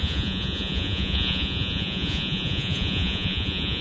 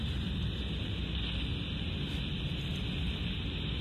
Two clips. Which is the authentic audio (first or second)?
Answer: second